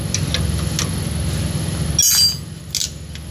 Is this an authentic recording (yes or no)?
yes